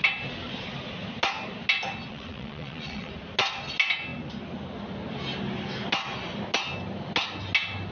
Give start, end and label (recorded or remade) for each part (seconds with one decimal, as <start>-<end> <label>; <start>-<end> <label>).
0.0-2.1 recorded; 2.1-3.1 remade; 3.1-7.9 recorded